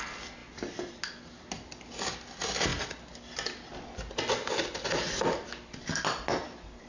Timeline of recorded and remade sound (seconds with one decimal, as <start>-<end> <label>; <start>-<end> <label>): 0.0-6.9 recorded